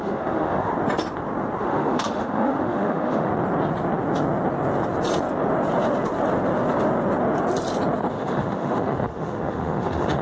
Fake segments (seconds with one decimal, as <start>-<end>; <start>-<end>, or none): 0.0-0.7; 1.6-3.3; 8.1-10.2